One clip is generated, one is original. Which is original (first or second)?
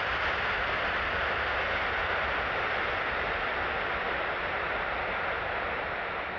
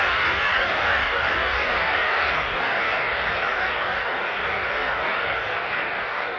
first